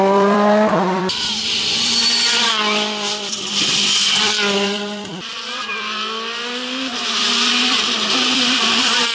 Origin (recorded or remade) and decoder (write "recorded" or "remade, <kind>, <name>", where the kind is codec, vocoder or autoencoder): remade, vocoder, BigVGAN v2